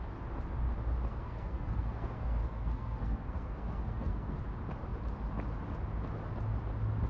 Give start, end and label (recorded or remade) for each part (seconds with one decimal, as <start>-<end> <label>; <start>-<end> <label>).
0.0-1.1 recorded; 1.1-4.4 remade; 4.4-7.1 recorded